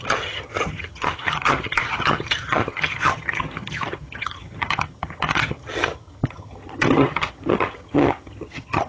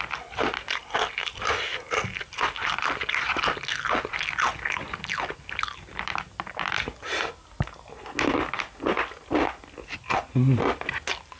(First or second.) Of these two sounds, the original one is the second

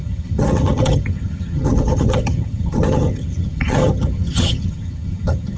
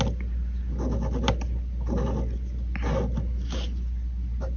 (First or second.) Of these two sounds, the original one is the second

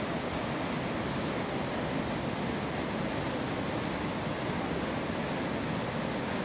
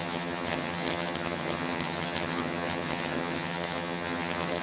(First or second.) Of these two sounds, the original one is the first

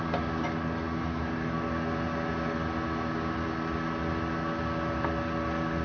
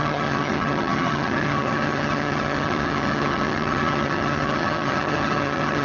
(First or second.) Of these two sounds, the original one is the first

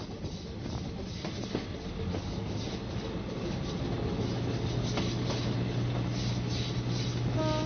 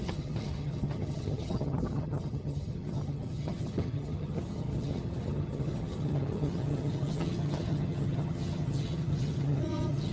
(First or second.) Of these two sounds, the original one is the first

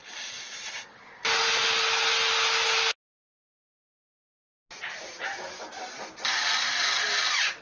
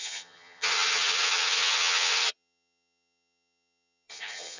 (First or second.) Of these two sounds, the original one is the first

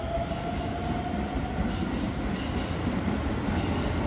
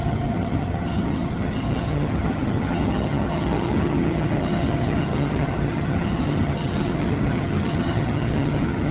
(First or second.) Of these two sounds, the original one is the first